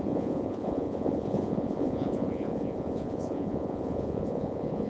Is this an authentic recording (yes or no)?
no